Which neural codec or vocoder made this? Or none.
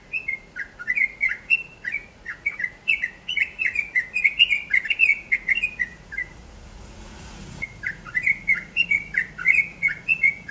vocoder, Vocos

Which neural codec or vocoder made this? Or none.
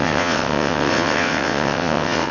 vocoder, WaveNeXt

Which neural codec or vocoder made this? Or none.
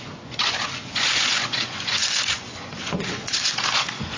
vocoder, Vocos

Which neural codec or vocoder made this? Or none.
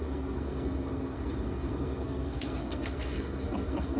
codec, SNAC